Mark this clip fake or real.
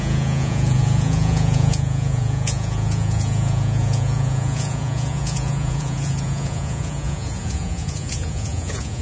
fake